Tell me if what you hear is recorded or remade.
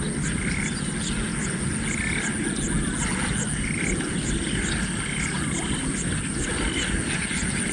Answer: recorded